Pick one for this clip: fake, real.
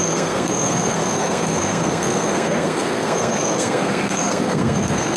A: fake